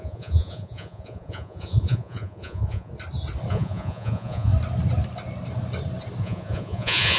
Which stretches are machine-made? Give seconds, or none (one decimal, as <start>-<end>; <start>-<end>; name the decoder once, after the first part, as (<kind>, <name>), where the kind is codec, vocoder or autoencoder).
0.0-2.9 (vocoder, Vocos); 3.5-4.5; 6.2-7.2